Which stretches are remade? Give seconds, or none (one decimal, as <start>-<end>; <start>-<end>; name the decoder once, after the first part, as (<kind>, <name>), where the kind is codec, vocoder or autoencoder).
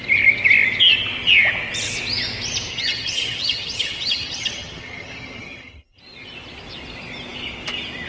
2.7-6.0 (vocoder, HiFi-GAN)